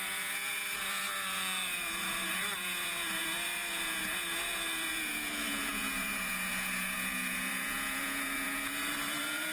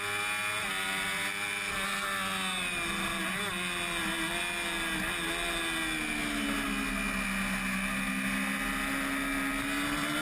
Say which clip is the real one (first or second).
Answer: second